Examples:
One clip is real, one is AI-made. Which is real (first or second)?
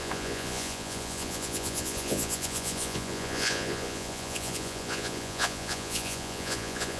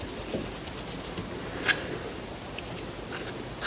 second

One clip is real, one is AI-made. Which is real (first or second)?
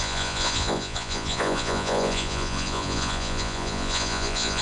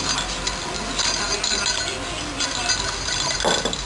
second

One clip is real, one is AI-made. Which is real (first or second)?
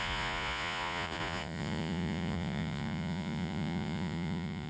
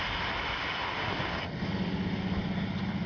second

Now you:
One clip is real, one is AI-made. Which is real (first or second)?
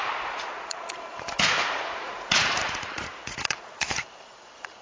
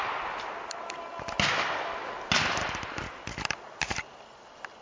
second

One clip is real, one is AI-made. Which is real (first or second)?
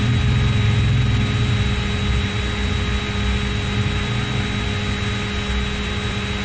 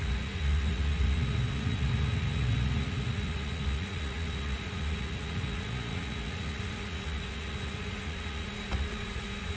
first